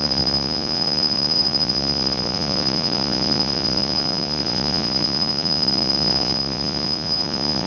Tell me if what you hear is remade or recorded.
remade